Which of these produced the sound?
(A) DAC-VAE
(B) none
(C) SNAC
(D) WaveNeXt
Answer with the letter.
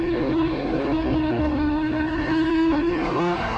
C